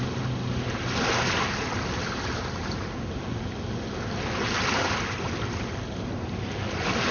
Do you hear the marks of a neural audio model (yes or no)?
no